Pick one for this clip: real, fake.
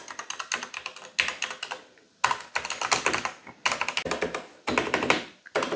real